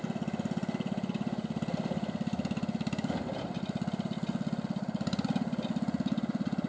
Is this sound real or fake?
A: real